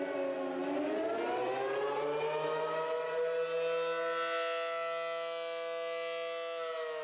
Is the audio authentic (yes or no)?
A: yes